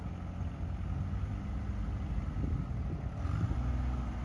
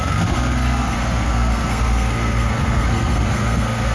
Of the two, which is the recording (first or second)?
first